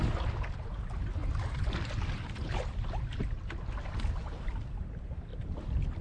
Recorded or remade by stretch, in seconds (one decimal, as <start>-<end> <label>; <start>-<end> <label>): 0.0-6.0 recorded

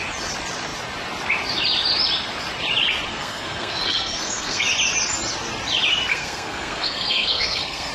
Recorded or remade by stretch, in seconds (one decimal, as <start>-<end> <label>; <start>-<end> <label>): 0.0-3.1 recorded; 3.1-4.6 remade; 4.6-6.1 recorded; 6.1-7.9 remade